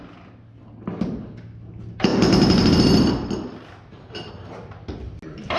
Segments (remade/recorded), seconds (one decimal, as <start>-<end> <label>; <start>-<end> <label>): 0.0-2.1 recorded; 2.1-4.3 remade; 4.3-5.6 recorded